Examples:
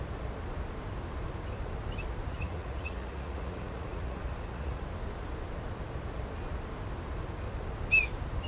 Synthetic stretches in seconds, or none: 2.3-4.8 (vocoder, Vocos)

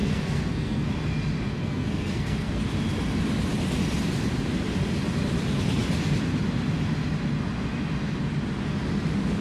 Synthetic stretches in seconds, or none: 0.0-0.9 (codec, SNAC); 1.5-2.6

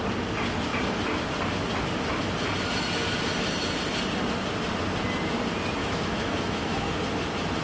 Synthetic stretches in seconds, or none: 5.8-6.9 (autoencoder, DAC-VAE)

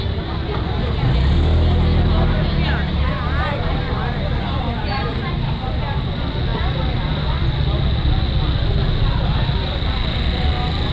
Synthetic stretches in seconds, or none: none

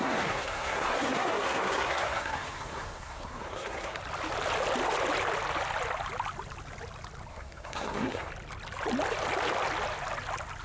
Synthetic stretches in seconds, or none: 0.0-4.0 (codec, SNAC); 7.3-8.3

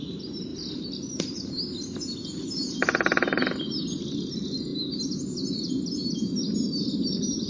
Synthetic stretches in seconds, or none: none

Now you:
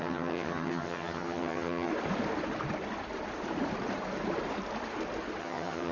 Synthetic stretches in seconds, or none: 0.0-1.9 (vocoder, HiFi-GAN); 5.4-5.9

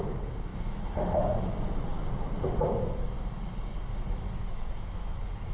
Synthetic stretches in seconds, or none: 0.5-1.4 (autoencoder, DAC-VAE); 4.4-5.1